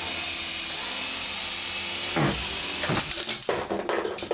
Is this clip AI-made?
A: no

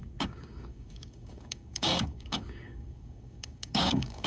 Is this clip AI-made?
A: yes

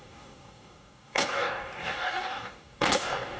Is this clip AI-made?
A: yes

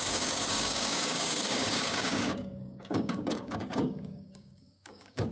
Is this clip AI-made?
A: yes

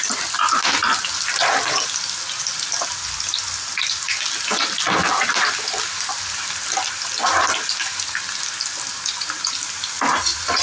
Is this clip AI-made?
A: no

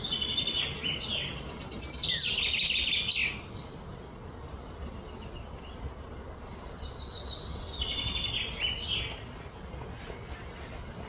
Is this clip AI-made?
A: no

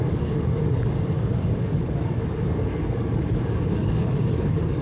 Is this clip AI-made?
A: yes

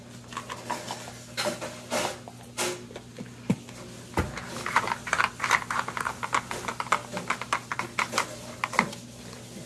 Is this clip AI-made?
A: no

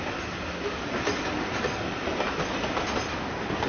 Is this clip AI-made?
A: no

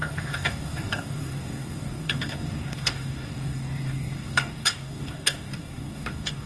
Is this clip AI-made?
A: yes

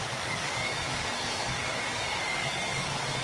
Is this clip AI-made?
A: yes